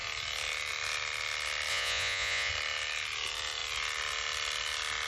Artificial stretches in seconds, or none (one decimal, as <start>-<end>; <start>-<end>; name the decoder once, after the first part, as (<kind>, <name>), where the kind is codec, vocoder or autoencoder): 1.7-2.5 (vocoder, Vocos)